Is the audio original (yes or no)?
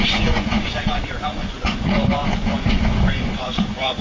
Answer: no